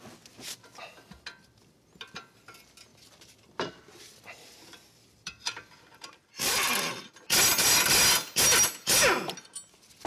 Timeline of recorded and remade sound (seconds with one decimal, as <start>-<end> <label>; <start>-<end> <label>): 0.0-2.9 recorded; 2.9-7.1 remade; 7.1-10.1 recorded